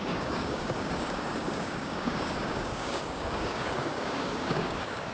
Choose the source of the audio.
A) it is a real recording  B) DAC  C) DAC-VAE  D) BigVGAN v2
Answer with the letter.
B